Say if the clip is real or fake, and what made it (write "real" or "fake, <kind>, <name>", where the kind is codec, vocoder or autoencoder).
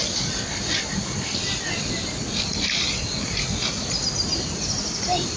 real